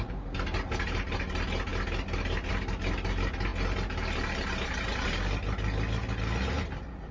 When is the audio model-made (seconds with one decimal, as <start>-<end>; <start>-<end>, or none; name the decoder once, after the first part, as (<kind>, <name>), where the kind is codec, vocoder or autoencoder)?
none